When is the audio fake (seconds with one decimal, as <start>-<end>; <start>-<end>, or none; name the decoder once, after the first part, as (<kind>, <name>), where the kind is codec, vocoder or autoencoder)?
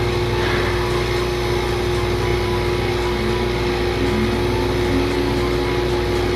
none